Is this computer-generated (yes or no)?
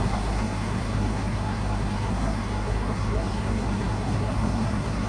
yes